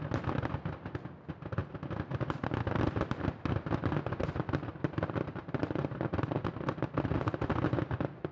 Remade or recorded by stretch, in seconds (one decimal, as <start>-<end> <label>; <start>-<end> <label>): 0.0-8.3 recorded